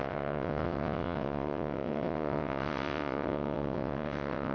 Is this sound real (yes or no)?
no